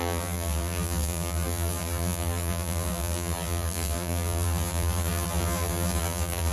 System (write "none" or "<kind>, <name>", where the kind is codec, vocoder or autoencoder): vocoder, BigVGAN v2